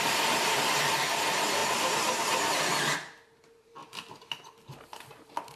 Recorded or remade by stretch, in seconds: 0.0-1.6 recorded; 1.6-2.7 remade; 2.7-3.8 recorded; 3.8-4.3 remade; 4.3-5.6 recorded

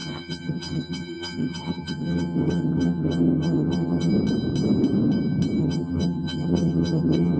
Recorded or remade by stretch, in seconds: 0.0-4.1 remade; 4.1-5.6 recorded; 5.6-7.4 remade

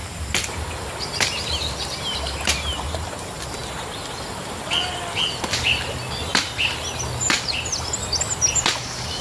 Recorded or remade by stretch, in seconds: 0.0-9.2 recorded

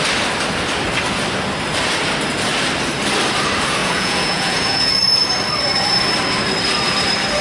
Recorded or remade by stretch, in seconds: 0.0-3.8 recorded; 3.8-5.0 remade; 5.0-7.4 recorded

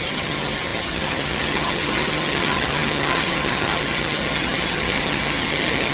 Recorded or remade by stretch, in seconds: 0.0-5.9 remade